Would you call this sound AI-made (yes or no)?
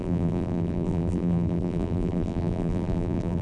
yes